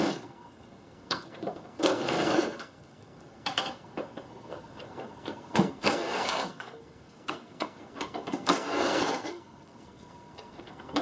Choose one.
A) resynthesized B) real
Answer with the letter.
A